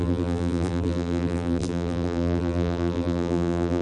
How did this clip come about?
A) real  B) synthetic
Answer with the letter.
B